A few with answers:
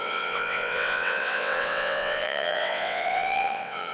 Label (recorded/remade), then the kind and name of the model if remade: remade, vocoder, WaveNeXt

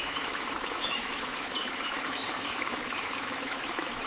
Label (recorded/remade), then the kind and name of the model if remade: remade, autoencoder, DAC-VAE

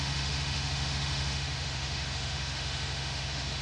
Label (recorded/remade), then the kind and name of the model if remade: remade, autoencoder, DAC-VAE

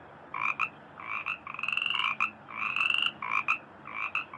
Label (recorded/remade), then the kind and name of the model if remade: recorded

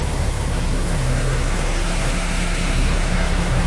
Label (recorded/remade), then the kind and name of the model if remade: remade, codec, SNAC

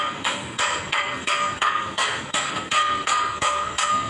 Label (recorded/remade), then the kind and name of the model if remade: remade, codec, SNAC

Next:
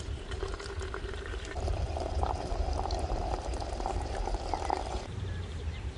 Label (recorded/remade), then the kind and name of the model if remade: remade, vocoder, BigVGAN v2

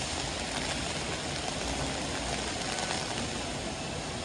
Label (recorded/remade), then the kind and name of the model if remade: recorded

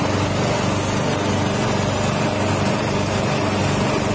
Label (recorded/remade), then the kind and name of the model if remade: recorded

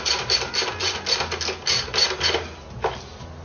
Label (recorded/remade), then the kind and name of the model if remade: recorded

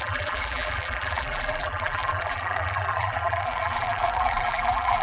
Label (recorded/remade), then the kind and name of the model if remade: remade, vocoder, BigVGAN v2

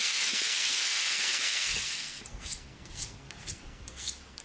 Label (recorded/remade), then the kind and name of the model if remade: remade, codec, SNAC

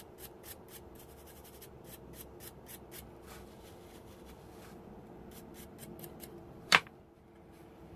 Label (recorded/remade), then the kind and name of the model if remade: remade, vocoder, BigVGAN v2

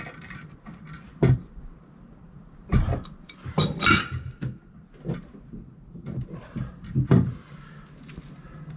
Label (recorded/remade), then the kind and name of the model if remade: recorded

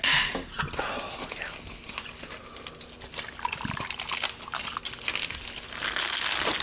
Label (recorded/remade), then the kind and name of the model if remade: recorded